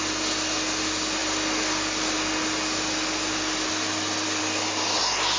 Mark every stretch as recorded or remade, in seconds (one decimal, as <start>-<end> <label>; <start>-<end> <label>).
0.0-5.4 recorded